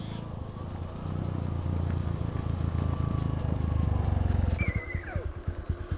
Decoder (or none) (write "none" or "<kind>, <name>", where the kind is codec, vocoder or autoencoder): none